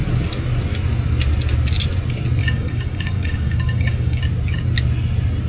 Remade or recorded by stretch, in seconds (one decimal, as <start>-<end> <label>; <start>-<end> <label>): 0.0-2.4 recorded; 2.4-4.2 remade; 4.2-5.5 recorded